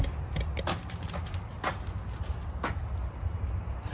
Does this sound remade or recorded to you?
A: recorded